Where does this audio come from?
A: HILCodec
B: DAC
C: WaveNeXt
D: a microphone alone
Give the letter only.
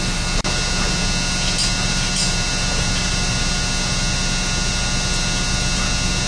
D